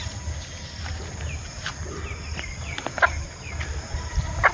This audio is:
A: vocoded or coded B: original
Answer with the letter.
B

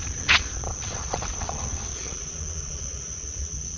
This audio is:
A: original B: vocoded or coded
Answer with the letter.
B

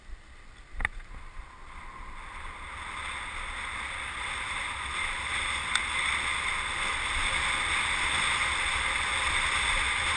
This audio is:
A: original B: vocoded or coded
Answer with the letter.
A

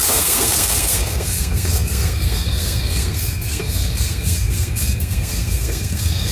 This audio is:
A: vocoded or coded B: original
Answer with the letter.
A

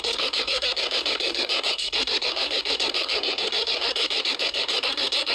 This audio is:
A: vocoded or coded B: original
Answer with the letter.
A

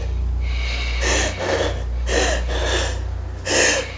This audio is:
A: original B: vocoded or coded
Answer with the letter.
A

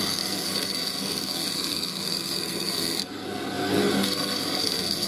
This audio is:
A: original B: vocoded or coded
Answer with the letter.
B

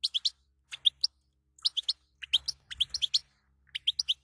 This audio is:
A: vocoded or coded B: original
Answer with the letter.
B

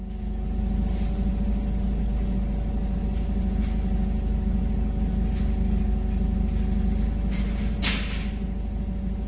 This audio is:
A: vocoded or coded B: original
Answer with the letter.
B